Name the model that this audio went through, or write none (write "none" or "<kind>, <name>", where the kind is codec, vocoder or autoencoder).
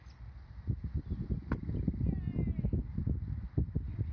none